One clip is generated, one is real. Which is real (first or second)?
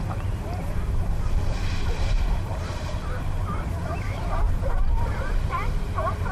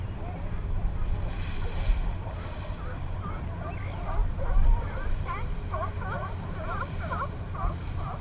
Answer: second